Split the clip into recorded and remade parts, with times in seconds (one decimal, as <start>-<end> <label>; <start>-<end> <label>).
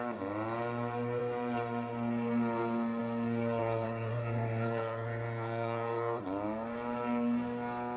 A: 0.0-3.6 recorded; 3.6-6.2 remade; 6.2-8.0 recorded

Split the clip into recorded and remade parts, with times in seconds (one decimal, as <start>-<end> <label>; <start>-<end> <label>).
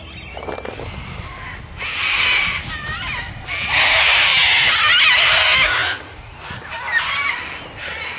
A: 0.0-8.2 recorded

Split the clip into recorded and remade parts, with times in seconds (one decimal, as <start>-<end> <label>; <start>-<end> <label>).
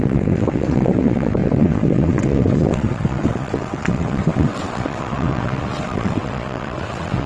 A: 0.0-7.3 remade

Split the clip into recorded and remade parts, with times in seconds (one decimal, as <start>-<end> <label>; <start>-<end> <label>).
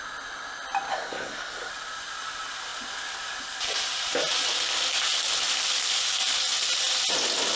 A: 0.0-0.9 recorded; 0.9-1.7 remade; 1.7-7.6 recorded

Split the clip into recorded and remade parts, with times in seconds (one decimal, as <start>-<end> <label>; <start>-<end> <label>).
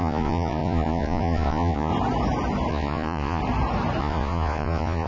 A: 0.0-1.9 remade; 1.9-2.7 recorded; 2.7-3.4 remade; 3.4-4.0 recorded; 4.0-5.1 remade